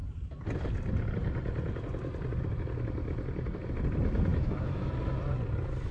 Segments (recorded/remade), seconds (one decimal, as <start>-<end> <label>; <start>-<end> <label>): 0.0-4.3 recorded; 4.3-4.9 remade; 4.9-5.9 recorded